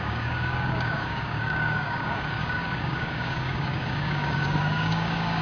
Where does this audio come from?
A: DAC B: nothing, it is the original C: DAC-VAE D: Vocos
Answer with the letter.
A